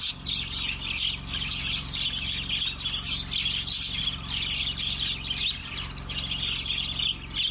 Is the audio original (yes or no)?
yes